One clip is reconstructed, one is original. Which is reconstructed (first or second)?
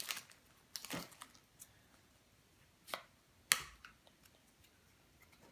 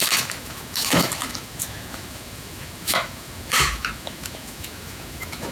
second